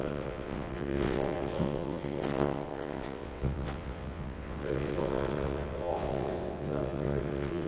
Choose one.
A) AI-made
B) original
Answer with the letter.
A